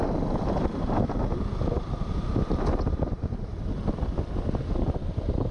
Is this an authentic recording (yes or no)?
yes